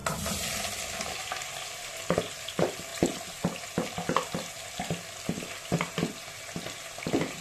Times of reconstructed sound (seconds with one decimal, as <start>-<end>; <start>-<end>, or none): none